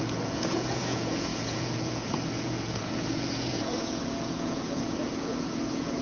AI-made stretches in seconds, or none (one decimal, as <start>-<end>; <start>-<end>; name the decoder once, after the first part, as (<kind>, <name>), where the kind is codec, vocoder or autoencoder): 0.0-6.0 (vocoder, Vocos)